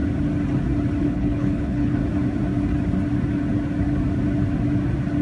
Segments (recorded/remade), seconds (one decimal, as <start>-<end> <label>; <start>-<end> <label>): 0.0-1.0 recorded; 1.0-2.0 remade; 2.0-5.2 recorded